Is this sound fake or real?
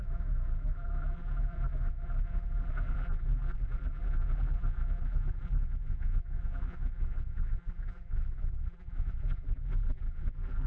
fake